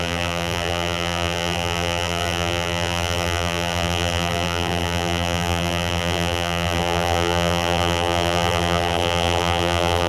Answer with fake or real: fake